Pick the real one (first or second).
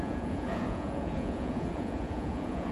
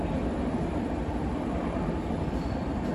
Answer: second